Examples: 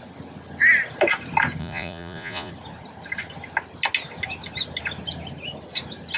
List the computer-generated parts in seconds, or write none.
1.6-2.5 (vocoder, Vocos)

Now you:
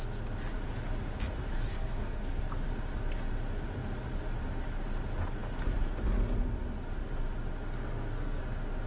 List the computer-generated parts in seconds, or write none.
1.7-2.4 (codec, SNAC); 7.8-8.4

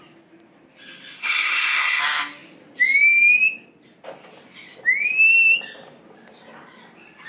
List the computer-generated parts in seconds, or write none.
1.2-2.0 (codec, SNAC)

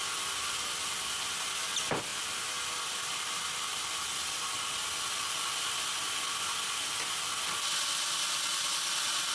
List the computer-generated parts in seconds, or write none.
none